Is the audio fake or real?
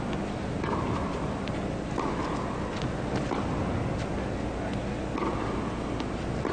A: real